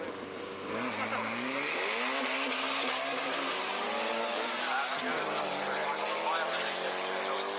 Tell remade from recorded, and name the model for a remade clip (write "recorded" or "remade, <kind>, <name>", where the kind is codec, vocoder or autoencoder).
recorded